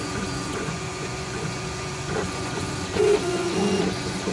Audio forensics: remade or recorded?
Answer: remade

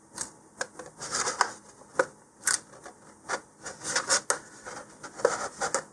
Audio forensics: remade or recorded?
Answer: recorded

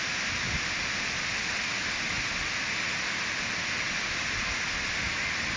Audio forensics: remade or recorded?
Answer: recorded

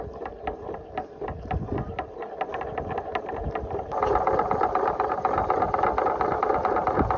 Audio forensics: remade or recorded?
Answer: recorded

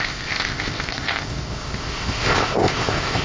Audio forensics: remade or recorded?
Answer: remade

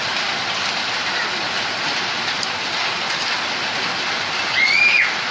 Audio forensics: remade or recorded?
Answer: recorded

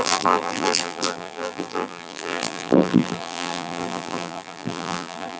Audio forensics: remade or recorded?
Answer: remade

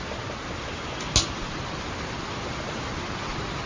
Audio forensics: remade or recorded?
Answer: recorded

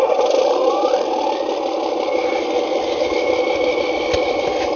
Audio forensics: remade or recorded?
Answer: recorded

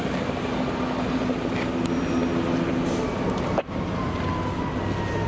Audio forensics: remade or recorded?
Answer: recorded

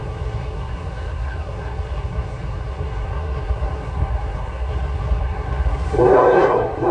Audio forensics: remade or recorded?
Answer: remade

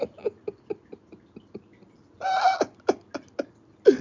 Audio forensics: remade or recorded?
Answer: recorded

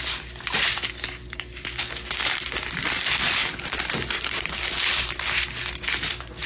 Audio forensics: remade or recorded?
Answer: recorded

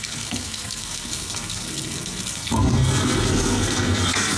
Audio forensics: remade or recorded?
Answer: remade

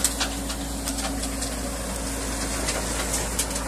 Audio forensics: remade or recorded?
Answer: recorded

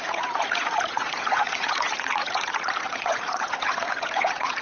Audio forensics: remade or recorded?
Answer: remade